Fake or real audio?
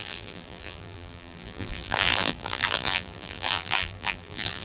fake